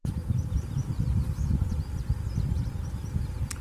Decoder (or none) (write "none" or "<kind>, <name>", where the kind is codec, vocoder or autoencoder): none